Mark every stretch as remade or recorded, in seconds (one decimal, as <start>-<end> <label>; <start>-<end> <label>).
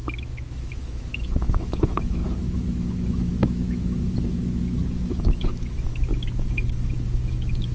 0.0-7.7 remade